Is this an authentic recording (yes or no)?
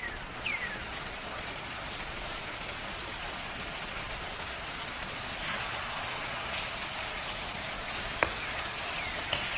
no